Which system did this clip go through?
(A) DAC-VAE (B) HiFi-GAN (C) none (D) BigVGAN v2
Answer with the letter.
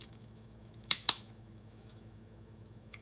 A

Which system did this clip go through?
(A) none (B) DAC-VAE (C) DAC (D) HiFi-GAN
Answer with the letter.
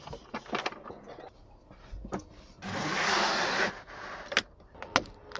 A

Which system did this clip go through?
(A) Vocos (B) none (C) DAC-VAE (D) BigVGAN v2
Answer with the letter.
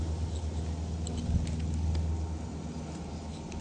B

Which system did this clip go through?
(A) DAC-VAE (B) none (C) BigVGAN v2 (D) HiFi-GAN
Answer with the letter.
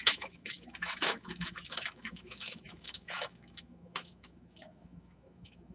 A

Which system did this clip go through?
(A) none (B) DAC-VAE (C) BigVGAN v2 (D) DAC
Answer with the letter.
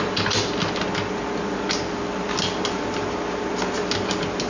A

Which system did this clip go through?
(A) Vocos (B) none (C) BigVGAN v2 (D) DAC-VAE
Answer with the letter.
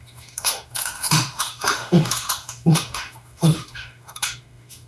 D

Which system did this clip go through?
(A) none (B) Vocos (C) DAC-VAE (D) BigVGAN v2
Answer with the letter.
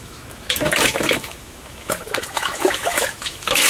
C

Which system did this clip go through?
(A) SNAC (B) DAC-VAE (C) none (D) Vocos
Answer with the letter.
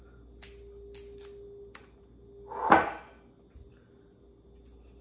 C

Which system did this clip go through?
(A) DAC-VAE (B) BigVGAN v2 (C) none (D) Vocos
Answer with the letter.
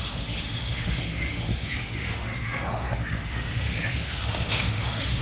A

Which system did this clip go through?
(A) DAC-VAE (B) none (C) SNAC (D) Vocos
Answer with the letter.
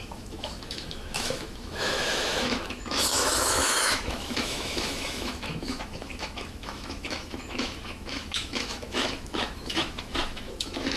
A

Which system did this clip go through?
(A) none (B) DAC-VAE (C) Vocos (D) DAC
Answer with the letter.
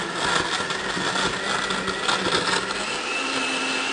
A